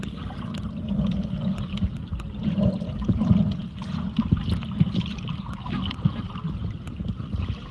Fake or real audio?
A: real